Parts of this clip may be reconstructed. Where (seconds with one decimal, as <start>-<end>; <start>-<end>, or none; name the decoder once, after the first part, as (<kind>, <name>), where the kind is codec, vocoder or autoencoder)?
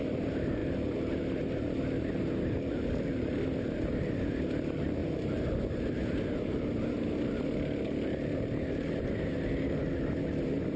none